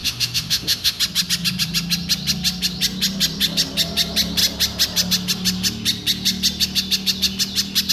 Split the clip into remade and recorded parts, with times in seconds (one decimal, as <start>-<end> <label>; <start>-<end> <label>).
0.0-1.0 remade; 1.0-7.9 recorded